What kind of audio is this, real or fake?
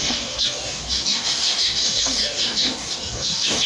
fake